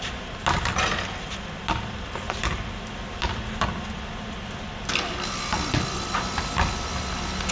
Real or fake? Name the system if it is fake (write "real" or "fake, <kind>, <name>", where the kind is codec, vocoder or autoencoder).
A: real